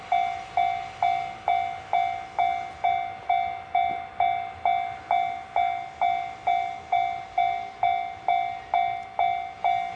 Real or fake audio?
real